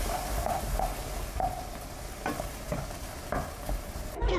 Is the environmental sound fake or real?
real